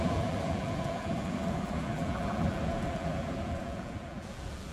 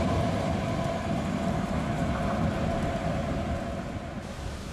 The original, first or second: second